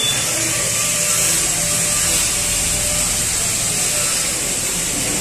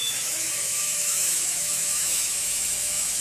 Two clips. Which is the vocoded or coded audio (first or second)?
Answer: second